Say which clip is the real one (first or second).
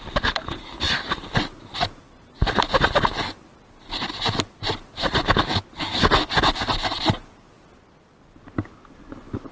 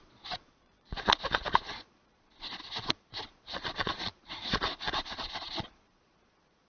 first